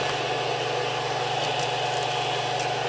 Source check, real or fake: real